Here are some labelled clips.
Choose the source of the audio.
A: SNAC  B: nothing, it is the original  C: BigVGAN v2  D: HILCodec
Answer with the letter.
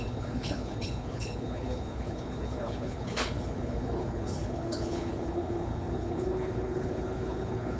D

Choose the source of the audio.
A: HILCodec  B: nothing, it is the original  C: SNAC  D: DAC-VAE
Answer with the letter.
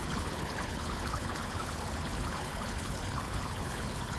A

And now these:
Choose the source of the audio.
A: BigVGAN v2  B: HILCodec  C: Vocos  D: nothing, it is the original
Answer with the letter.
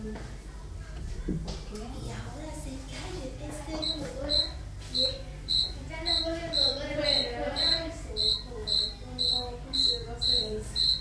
D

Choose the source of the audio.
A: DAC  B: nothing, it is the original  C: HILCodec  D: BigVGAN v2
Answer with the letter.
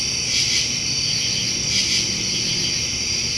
B